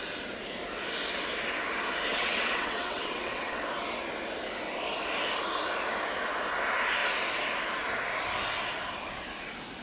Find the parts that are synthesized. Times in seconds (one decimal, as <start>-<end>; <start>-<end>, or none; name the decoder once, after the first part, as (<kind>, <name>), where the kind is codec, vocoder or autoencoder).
2.1-3.6 (vocoder, WaveNeXt)